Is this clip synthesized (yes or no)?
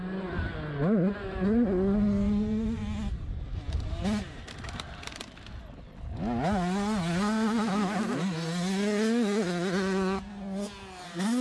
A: no